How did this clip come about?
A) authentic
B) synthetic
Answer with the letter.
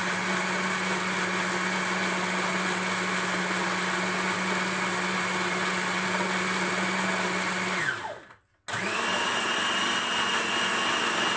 A